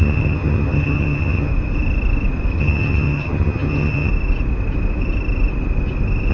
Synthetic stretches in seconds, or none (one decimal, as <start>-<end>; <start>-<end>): 0.0-1.5; 2.6-4.1